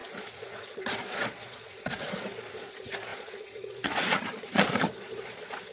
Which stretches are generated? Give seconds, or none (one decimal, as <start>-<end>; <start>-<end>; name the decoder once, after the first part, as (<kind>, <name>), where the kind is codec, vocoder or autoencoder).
0.0-5.7 (vocoder, Vocos)